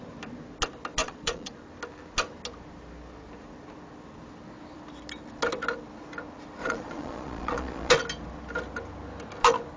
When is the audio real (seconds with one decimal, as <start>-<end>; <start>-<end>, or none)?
0.0-1.0; 1.5-6.6; 7.9-9.8